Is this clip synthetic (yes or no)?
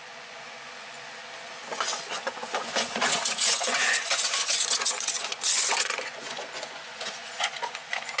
yes